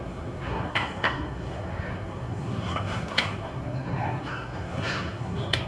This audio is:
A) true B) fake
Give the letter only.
B